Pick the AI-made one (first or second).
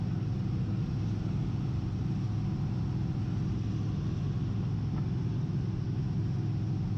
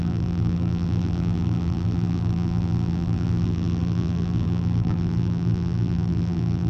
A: second